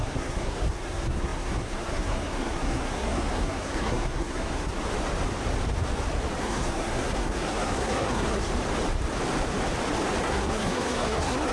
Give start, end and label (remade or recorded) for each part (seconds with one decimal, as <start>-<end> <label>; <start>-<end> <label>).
0.0-4.7 remade; 4.7-6.4 recorded; 6.4-8.5 remade; 8.5-10.2 recorded; 10.2-11.5 remade